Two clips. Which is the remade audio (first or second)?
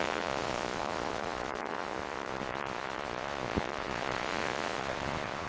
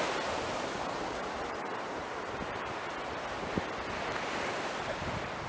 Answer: first